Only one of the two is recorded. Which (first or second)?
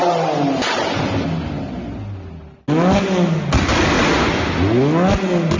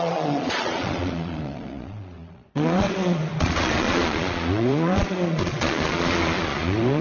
first